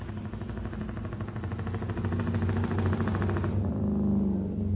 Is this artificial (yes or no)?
no